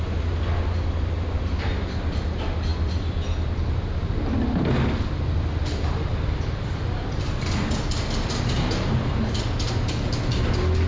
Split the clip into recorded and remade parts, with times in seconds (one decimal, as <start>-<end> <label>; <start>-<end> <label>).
0.0-10.9 recorded